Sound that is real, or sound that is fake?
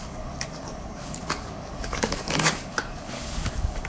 fake